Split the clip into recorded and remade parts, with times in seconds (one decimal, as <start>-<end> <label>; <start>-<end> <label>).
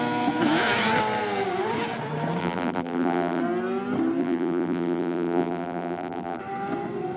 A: 0.0-2.4 recorded; 2.4-3.4 remade; 3.4-4.2 recorded; 4.2-6.4 remade; 6.4-7.2 recorded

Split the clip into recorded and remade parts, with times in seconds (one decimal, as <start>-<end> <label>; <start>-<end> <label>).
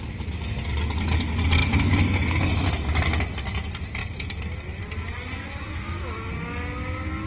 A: 0.0-1.6 recorded; 1.6-2.5 remade; 2.5-5.6 recorded; 5.6-6.3 remade; 6.3-7.3 recorded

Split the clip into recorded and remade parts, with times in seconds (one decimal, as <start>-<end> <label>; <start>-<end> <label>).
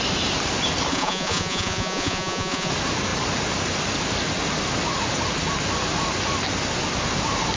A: 0.0-0.9 recorded; 0.9-2.7 remade; 2.7-7.6 recorded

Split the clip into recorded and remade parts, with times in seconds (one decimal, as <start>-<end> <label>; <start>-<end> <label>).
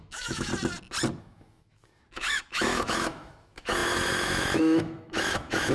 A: 0.0-0.5 remade; 0.5-1.2 recorded; 1.2-5.7 remade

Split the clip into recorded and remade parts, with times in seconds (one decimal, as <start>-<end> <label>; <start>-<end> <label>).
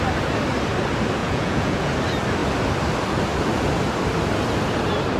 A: 0.0-1.2 recorded; 1.2-1.9 remade; 1.9-5.2 recorded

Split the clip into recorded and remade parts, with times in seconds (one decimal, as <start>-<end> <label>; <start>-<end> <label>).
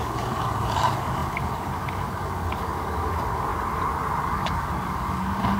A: 0.0-3.5 remade; 3.5-4.2 recorded; 4.2-5.6 remade